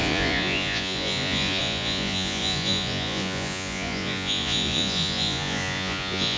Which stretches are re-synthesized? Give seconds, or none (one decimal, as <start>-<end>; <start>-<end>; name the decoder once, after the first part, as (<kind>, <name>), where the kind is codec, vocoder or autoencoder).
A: 0.0-6.4 (vocoder, Vocos)